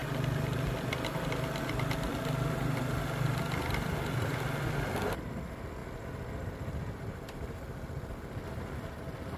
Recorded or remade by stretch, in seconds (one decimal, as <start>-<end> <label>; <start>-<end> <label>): 0.0-9.4 recorded